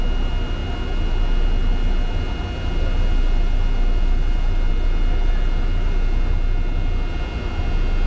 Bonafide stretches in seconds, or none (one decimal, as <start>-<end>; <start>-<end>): 0.0-8.1